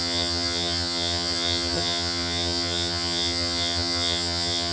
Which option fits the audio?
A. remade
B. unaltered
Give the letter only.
A